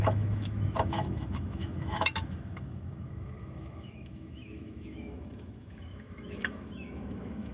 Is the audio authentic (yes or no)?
no